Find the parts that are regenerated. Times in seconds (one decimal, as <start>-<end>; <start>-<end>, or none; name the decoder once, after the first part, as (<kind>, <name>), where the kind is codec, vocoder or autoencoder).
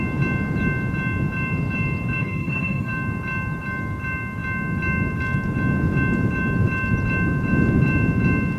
2.2-2.9 (autoencoder, DAC-VAE)